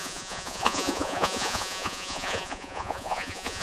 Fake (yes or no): yes